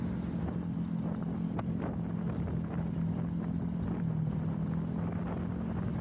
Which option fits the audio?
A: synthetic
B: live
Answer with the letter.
B